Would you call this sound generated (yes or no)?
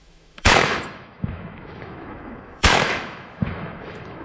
yes